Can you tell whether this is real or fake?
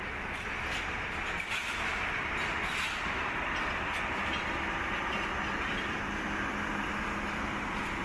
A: real